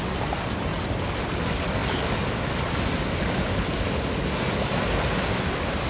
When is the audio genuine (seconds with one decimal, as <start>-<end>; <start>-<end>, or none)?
0.0-5.9